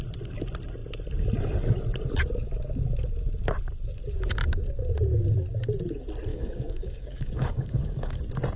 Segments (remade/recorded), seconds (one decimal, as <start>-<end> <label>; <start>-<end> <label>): 0.0-6.3 recorded; 6.3-8.2 remade; 8.2-8.6 recorded